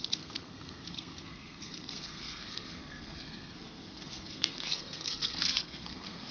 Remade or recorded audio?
remade